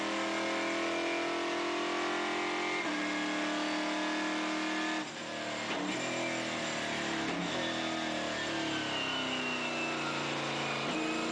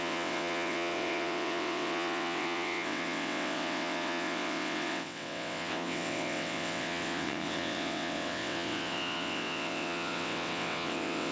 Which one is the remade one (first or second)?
second